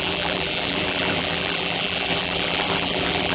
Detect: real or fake fake